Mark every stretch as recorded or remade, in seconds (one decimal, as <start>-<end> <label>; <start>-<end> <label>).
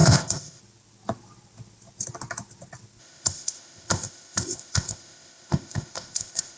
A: 0.0-0.6 remade; 0.6-3.0 recorded; 3.0-6.6 remade